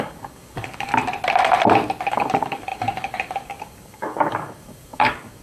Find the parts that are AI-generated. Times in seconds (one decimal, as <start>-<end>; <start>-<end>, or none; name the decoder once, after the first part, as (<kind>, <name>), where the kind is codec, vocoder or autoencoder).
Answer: 0.0-0.9 (codec, DAC); 2.1-5.4